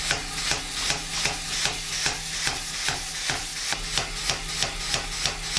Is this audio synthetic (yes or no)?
no